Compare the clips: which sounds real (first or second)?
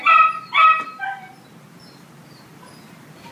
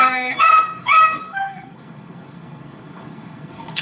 first